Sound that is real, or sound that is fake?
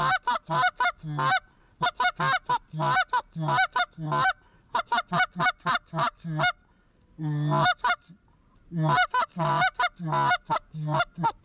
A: real